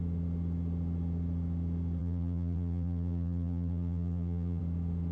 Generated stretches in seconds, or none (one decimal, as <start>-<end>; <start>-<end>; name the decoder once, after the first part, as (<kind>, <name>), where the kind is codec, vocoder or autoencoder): 2.0-4.6 (vocoder, BigVGAN v2)